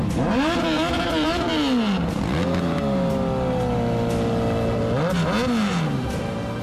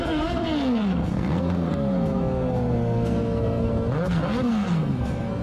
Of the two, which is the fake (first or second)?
second